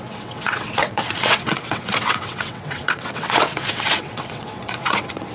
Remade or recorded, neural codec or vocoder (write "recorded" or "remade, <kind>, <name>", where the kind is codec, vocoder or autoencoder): remade, vocoder, WaveNeXt